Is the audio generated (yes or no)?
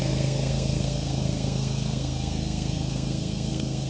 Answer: yes